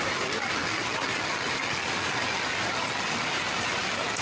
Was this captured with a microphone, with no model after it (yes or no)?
yes